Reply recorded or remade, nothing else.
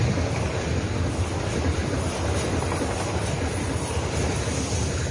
recorded